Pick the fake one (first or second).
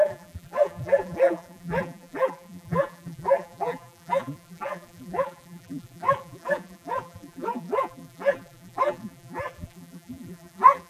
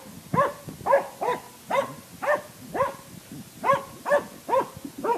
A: first